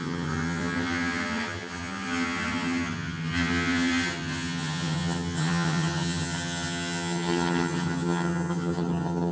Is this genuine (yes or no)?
no